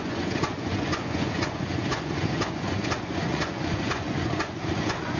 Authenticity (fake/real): fake